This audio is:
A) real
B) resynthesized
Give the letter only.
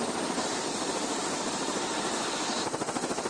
A